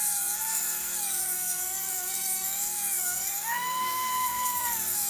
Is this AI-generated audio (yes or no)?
yes